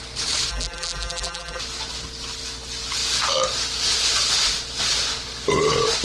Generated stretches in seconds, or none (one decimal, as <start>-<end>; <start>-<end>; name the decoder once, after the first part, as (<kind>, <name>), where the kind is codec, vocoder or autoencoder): 0.5-1.6 (vocoder, BigVGAN v2)